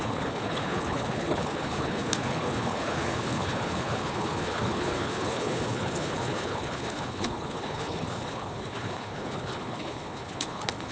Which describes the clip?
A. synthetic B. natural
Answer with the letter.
A